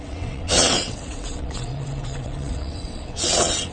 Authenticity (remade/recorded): remade